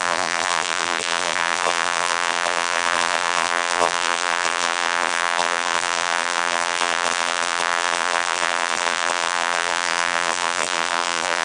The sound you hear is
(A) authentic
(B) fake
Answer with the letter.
B